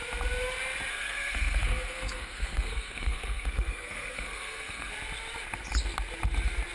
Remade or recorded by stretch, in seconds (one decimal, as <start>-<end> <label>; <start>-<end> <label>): 0.0-0.9 recorded; 0.9-4.9 remade; 4.9-6.7 recorded